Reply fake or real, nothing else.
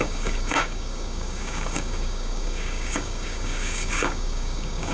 fake